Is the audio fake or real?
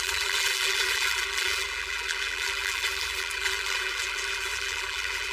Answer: fake